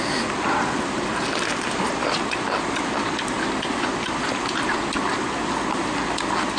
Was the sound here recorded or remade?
recorded